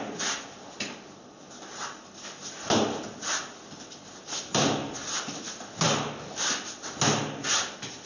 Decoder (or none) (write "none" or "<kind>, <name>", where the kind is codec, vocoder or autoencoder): none